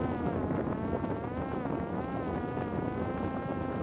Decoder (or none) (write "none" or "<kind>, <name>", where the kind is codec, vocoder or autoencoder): none